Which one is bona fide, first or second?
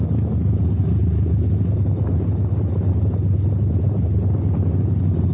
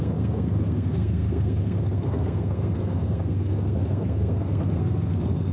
first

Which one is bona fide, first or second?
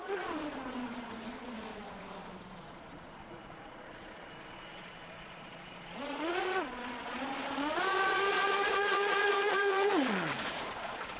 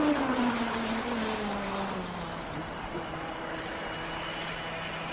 second